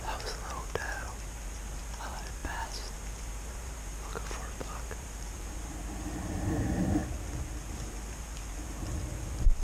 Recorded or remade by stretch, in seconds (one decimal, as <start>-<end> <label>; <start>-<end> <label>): 0.0-0.8 recorded; 0.8-1.7 remade; 1.7-2.4 recorded; 2.4-5.8 remade; 5.8-9.6 recorded